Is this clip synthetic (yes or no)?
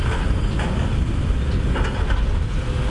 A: no